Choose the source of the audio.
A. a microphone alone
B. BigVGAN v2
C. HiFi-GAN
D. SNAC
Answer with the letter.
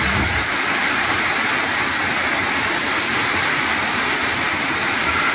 A